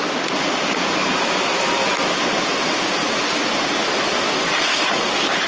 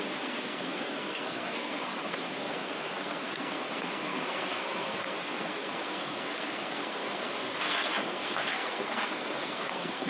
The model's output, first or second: second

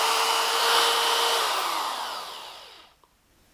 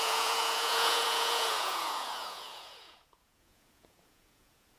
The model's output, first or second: second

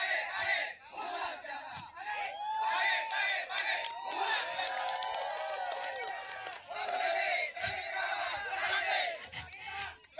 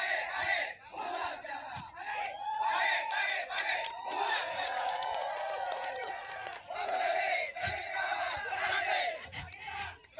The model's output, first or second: second